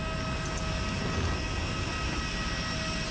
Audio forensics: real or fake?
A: real